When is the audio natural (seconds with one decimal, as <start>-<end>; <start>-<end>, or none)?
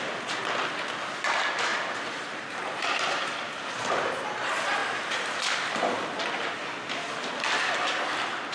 0.0-1.7; 3.9-8.5